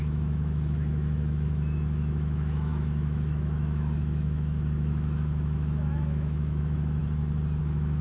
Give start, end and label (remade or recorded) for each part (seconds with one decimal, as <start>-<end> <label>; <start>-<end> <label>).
0.0-7.0 remade; 7.0-7.6 recorded; 7.6-8.0 remade